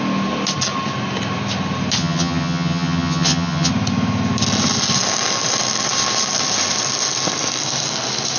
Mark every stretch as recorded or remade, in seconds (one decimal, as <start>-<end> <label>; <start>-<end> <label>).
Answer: 0.0-2.0 recorded; 2.0-3.7 remade; 3.7-8.4 recorded

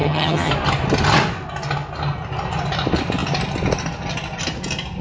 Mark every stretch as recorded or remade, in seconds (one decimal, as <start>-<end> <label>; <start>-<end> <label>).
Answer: 0.0-0.5 remade; 0.5-5.0 recorded

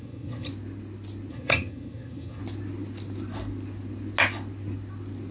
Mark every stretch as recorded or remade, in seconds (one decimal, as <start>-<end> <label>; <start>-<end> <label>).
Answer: 0.0-0.5 remade; 0.5-1.3 recorded; 1.3-2.4 remade; 2.4-5.3 recorded

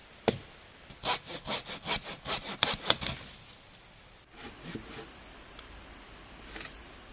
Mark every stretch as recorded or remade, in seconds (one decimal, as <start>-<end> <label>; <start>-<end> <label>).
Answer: 0.0-7.1 recorded

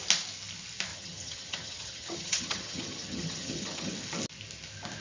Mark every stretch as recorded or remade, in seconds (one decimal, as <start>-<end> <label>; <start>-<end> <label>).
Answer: 0.0-0.9 recorded; 0.9-3.9 remade; 3.9-5.0 recorded

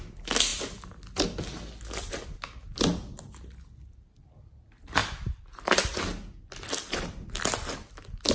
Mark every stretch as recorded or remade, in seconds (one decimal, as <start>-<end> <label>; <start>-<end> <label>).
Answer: 0.0-8.3 recorded